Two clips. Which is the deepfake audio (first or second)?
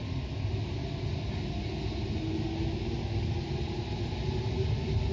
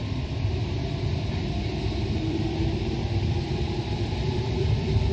second